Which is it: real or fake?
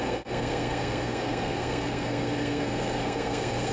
fake